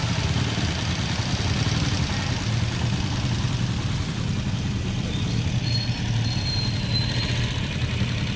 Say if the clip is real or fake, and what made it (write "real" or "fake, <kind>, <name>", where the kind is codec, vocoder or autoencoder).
real